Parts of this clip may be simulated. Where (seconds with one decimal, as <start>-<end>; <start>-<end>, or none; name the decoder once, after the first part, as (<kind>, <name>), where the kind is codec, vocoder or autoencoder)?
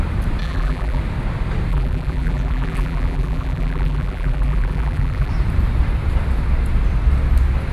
0.4-1.0 (vocoder, BigVGAN v2); 1.7-5.3